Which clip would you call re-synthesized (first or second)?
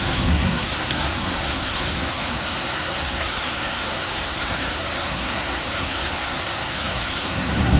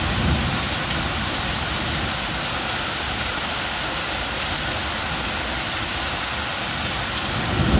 first